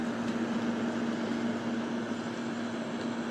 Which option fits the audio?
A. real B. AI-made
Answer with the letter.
A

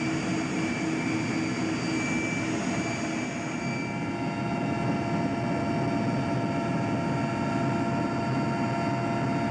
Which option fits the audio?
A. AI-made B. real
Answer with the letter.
B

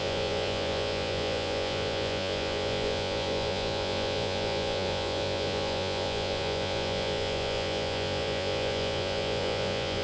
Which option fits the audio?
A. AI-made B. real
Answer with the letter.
A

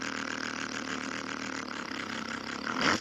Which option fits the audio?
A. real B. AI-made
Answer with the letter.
A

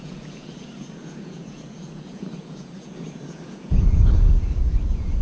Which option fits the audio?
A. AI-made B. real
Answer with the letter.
A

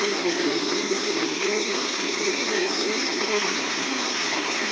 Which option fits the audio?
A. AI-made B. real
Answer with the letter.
A